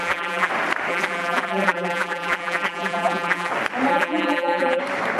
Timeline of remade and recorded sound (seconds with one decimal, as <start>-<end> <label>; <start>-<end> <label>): 0.0-0.5 remade; 0.5-0.9 recorded; 0.9-3.5 remade; 3.5-3.9 recorded; 3.9-4.8 remade; 4.8-5.2 recorded